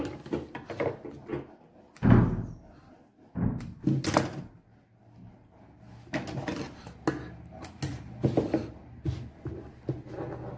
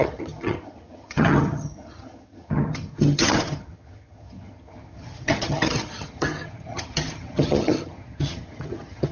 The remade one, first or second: second